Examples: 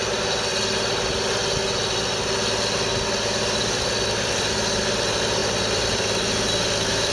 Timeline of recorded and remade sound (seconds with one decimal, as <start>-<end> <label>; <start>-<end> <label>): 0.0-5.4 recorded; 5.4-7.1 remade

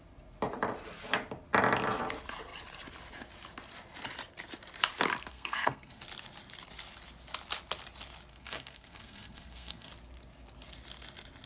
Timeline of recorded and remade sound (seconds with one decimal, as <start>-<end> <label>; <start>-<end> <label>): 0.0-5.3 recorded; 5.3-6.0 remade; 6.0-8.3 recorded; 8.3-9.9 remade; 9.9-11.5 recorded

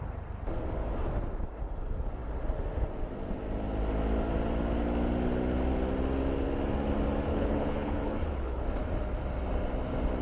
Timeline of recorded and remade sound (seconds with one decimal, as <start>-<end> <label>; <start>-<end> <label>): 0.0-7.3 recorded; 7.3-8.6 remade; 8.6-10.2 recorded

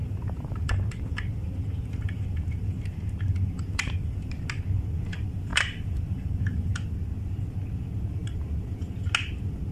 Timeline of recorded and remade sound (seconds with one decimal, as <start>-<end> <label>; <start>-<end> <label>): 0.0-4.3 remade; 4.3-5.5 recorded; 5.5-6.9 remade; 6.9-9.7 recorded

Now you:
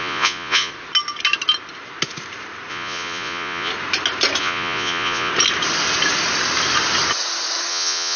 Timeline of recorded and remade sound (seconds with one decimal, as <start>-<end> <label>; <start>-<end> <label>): 0.0-0.7 remade; 0.7-2.7 recorded; 2.7-3.7 remade; 3.7-4.4 recorded; 4.4-5.3 remade; 5.3-7.7 recorded; 7.7-8.2 remade

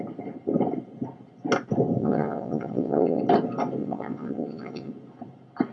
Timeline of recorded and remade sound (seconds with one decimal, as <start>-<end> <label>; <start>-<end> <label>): 0.0-2.0 recorded; 2.0-3.2 remade; 3.2-3.8 recorded; 3.8-4.9 remade; 4.9-5.7 recorded

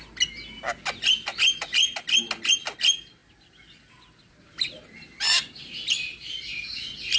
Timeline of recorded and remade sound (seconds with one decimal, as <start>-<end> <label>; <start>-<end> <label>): 0.0-7.2 recorded

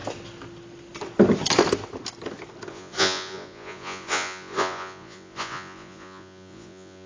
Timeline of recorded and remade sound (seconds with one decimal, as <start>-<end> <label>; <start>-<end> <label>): 0.0-2.7 recorded; 2.7-7.1 remade